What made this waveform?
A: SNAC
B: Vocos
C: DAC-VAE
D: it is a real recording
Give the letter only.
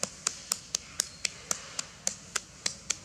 D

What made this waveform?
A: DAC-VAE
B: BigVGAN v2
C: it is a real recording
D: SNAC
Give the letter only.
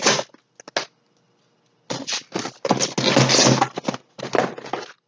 C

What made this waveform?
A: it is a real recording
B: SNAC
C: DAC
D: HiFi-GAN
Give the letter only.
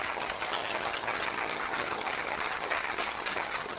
D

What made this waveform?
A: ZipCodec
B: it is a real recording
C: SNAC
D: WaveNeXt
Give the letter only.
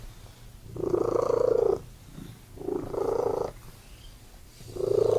B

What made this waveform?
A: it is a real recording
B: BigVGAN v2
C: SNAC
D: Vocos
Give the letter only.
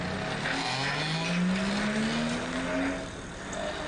A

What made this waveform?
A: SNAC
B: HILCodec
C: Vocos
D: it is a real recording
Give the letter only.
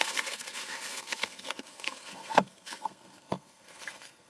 A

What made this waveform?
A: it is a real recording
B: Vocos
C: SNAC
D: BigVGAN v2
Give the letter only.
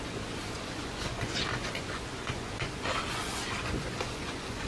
B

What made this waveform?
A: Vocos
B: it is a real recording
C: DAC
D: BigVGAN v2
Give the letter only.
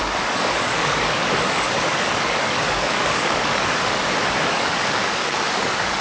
C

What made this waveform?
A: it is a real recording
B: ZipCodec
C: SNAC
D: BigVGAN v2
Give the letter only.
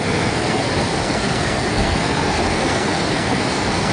C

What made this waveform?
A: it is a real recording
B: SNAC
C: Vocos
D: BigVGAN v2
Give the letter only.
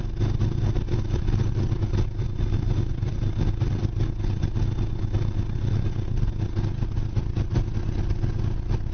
A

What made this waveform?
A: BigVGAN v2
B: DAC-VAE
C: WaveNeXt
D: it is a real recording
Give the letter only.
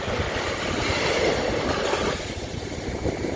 D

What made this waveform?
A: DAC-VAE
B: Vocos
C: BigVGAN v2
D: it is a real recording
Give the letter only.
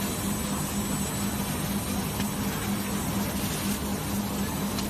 D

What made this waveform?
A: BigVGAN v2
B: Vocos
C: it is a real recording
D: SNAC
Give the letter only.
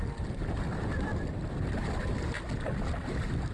C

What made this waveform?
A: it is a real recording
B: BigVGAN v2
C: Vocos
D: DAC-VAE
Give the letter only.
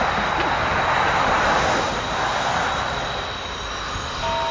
A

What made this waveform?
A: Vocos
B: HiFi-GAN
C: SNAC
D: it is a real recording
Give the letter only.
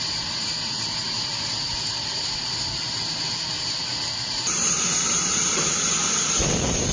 D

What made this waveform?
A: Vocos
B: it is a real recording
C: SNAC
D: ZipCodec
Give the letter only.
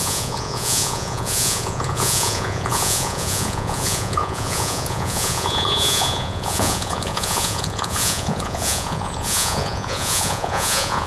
A